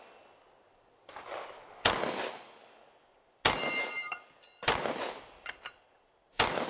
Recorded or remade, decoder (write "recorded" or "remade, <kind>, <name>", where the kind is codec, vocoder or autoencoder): recorded